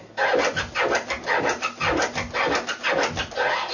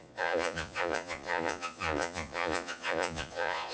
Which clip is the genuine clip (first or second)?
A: first